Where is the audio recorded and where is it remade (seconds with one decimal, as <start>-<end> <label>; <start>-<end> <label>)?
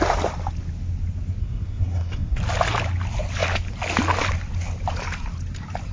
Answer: 0.0-1.4 recorded; 1.4-2.4 remade; 2.4-5.9 recorded